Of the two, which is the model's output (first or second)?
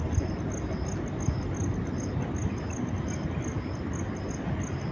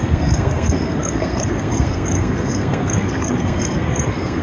second